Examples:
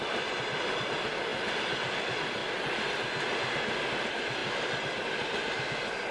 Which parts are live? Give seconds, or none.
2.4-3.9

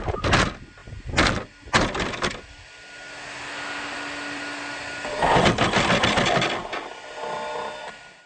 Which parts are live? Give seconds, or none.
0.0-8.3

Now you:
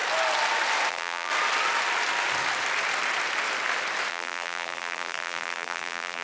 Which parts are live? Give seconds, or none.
0.0-0.9; 1.3-4.1

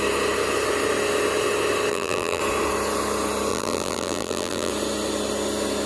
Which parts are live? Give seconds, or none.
0.0-1.9; 2.4-3.5; 4.7-5.9

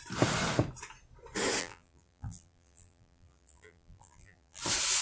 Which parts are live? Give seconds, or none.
0.0-1.6; 4.6-5.0

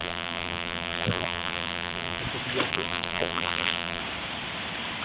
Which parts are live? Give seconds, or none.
2.2-2.7; 4.0-5.0

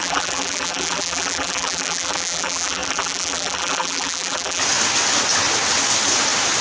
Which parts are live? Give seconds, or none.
4.6-6.6

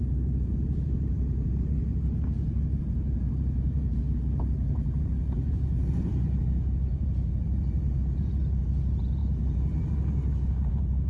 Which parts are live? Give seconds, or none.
none